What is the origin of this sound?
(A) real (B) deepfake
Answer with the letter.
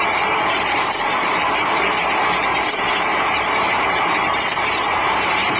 B